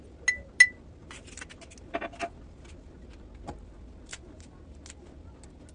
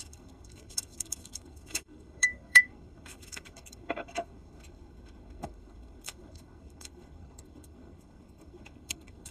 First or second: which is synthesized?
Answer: second